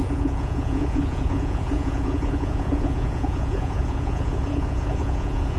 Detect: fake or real fake